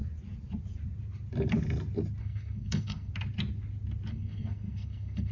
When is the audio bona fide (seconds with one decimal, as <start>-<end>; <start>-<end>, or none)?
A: 0.0-2.2; 3.1-4.1